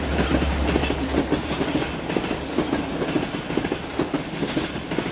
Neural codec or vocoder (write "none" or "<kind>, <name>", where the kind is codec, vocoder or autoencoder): none